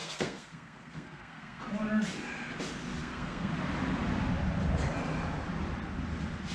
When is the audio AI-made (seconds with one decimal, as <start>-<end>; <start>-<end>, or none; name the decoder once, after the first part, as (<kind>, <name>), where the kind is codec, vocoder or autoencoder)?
0.0-1.6 (codec, SNAC); 3.0-3.5